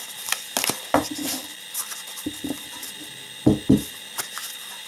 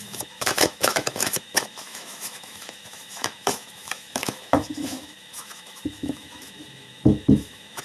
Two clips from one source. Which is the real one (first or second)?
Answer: first